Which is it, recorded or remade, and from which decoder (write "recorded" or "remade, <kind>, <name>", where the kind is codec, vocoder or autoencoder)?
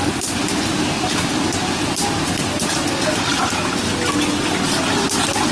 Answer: recorded